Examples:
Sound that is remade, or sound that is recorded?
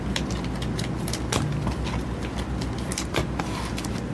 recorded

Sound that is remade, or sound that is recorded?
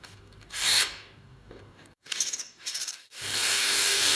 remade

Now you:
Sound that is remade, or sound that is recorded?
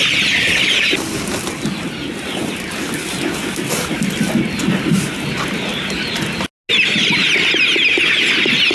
recorded